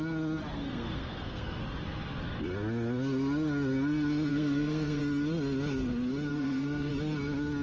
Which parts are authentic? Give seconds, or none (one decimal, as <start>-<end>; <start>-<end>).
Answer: 0.0-0.5; 1.6-4.3; 5.0-6.3; 6.9-7.6